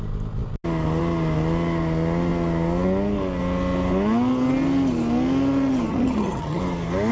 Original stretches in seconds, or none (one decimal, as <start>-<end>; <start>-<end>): 0.0-5.9; 6.6-7.1